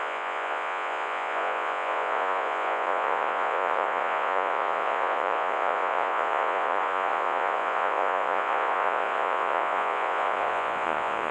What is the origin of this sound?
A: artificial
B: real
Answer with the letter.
A